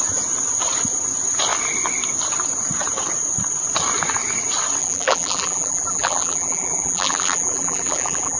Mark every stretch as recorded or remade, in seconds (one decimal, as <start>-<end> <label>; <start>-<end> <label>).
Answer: 0.0-4.8 recorded; 4.8-8.4 remade